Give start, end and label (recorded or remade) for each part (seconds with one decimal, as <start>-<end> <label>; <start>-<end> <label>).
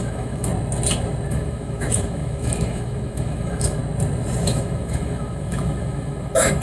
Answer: 0.0-0.5 remade; 0.5-1.3 recorded; 1.3-3.8 remade; 3.8-4.4 recorded; 4.4-6.6 remade